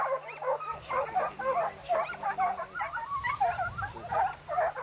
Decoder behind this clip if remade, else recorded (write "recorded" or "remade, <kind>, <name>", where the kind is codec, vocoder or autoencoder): recorded